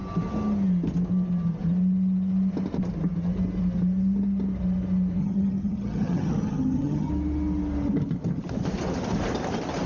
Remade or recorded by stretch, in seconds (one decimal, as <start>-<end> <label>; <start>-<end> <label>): 0.0-5.2 recorded; 5.2-7.1 remade; 7.1-9.9 recorded